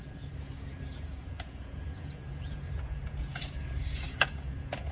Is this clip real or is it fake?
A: fake